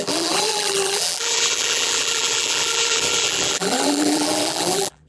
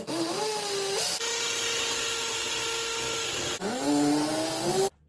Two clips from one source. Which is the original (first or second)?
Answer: second